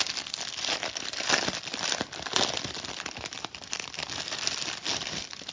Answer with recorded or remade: remade